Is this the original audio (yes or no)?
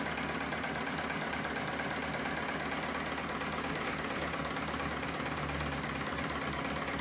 yes